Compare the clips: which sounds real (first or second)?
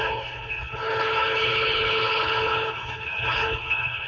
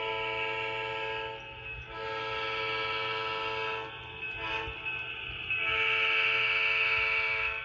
second